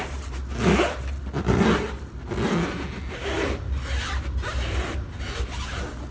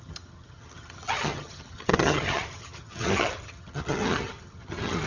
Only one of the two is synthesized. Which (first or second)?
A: second